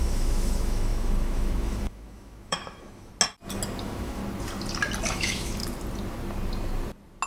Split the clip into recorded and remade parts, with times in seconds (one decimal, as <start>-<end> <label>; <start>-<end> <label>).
0.0-3.1 remade; 3.1-3.8 recorded; 3.8-4.2 remade; 4.2-5.1 recorded; 5.1-5.6 remade; 5.6-7.3 recorded